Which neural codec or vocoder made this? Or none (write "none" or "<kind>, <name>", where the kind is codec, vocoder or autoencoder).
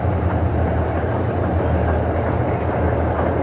none